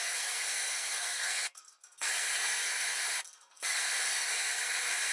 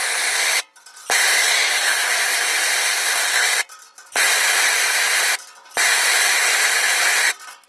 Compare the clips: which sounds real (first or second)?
second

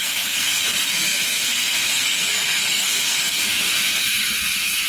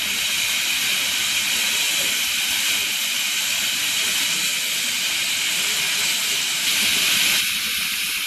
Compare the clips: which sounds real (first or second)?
second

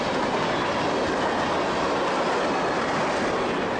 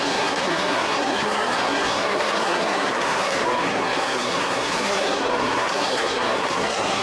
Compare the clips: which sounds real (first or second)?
first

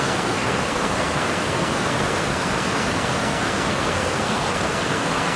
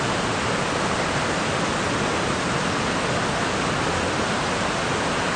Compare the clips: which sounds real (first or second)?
second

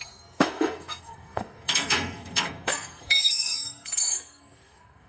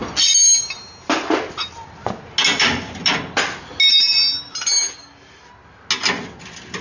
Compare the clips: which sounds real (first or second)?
second